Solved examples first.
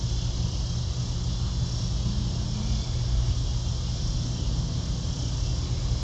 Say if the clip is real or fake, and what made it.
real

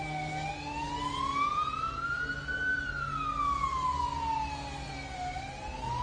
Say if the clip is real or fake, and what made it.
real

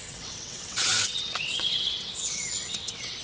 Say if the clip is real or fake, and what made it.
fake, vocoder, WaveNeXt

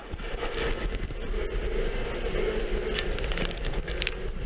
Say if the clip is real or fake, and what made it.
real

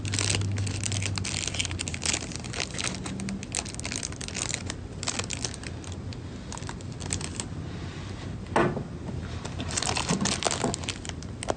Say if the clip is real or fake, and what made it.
real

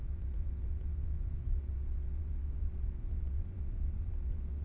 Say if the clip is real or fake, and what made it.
fake, vocoder, WaveNeXt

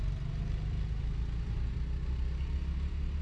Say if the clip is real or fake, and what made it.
real